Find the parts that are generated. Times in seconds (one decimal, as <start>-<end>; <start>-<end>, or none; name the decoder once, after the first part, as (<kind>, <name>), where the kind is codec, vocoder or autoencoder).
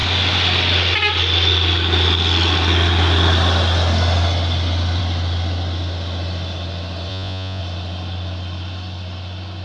7.1-7.6 (vocoder, Vocos)